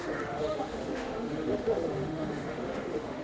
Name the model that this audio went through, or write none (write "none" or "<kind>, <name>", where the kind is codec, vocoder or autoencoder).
autoencoder, DAC-VAE